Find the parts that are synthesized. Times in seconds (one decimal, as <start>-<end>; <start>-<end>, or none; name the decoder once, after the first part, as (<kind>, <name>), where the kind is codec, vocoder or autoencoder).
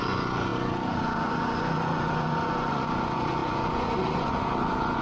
0.0-5.0 (vocoder, Vocos)